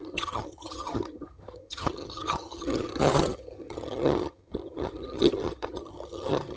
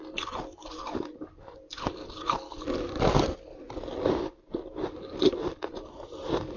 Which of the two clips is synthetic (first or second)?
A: first